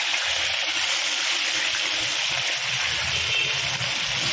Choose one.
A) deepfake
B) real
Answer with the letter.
B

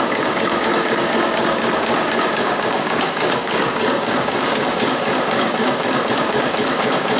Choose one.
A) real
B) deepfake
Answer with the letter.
B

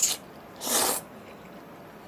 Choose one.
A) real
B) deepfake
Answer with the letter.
A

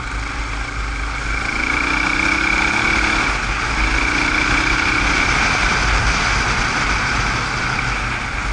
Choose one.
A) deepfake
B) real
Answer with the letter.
B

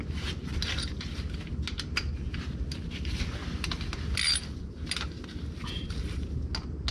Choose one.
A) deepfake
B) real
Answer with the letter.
B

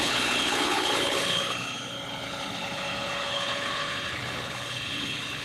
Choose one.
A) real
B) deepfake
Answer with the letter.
B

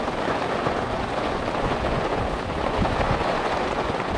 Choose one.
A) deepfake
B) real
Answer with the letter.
A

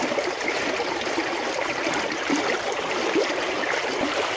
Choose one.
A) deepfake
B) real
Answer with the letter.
B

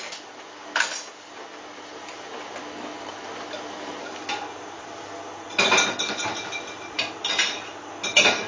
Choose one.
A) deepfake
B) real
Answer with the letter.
B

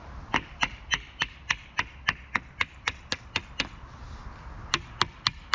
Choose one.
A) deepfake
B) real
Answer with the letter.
B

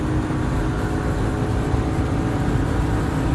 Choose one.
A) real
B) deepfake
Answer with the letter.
A